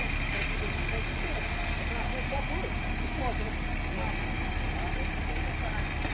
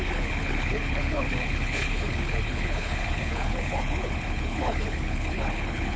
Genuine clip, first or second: first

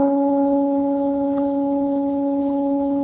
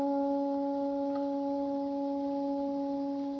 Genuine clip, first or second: second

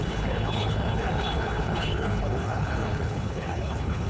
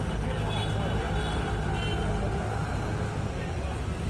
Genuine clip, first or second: second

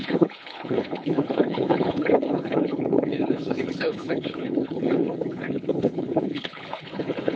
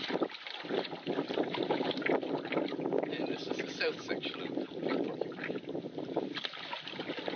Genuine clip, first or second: second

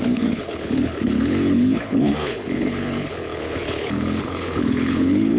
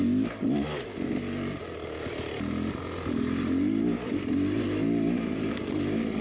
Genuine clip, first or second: second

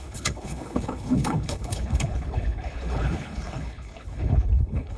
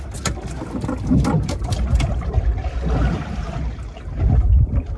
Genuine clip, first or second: second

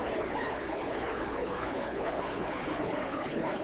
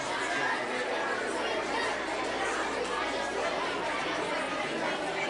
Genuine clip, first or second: second